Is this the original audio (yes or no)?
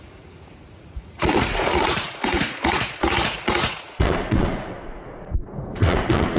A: no